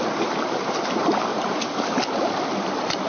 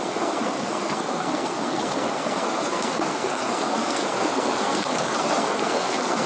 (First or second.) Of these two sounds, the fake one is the second